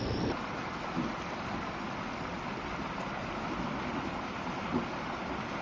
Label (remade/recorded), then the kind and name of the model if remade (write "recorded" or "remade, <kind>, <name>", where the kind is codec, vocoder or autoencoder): recorded